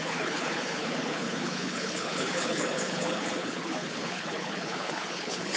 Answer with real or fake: fake